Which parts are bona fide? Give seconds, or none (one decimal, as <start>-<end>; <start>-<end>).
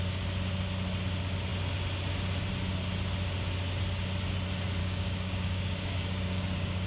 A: 0.0-4.8